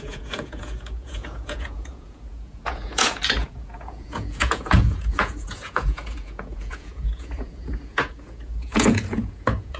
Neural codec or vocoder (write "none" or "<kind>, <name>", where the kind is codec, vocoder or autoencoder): vocoder, Vocos